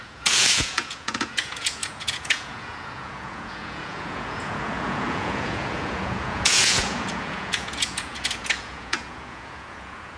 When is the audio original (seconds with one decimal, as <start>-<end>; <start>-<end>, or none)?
none